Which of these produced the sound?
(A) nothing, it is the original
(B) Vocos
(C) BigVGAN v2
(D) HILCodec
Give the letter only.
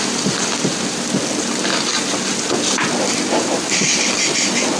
A